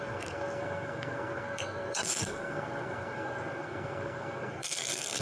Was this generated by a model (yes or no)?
yes